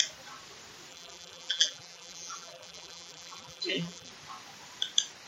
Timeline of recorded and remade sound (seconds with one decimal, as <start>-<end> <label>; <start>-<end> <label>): 0.0-0.9 recorded; 0.9-4.1 remade; 4.1-5.3 recorded